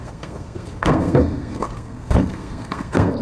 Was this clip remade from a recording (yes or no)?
yes